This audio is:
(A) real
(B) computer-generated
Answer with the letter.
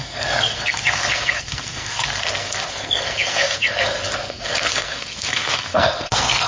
B